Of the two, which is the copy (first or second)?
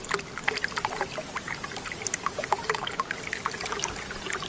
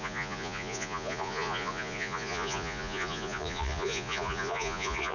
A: second